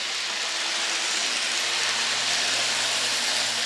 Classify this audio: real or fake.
real